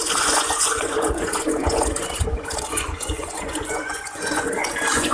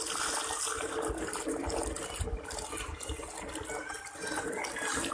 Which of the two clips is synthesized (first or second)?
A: first